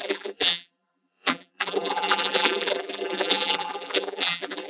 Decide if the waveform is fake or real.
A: fake